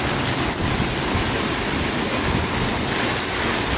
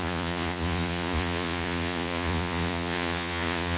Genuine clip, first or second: first